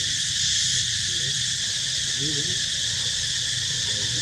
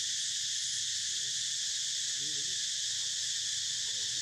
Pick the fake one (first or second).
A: first